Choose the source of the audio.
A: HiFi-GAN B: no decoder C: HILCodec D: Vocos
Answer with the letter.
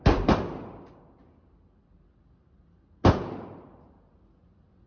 B